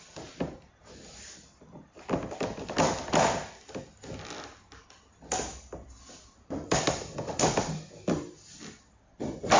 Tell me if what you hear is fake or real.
real